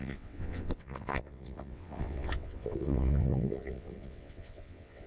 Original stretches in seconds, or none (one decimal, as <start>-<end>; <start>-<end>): none